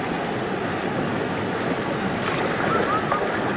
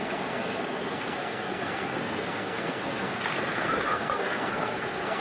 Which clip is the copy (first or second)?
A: second